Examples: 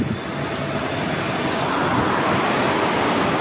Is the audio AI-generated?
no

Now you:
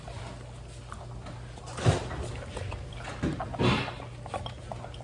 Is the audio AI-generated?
no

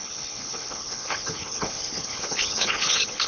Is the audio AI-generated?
yes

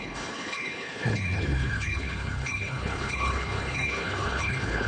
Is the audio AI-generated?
yes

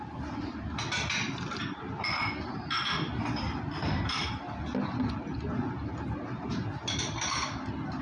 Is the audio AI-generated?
no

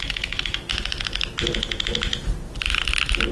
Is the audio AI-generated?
no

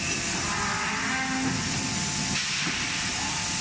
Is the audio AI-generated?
no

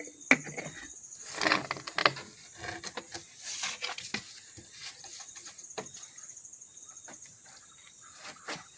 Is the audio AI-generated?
no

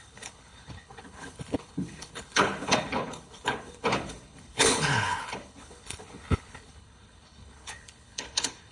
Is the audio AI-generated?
yes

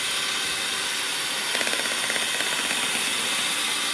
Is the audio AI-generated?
no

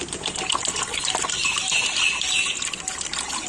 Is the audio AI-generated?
no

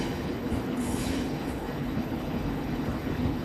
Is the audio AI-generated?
yes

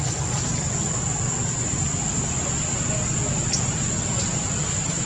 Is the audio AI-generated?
no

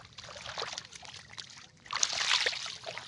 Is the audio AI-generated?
no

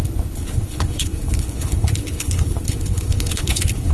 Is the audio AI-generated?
yes